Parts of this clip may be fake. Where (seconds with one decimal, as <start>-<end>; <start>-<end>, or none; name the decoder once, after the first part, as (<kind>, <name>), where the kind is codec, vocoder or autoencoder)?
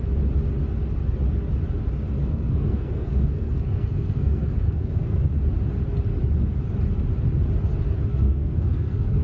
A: 2.2-5.2 (codec, SNAC); 8.1-9.2